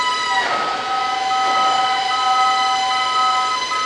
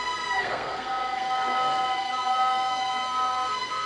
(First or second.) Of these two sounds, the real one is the first